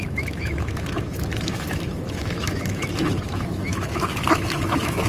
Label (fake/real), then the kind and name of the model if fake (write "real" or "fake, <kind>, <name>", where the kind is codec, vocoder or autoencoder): fake, autoencoder, DAC-VAE